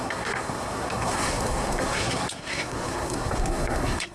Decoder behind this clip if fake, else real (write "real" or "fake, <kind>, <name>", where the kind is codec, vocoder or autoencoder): fake, codec, SNAC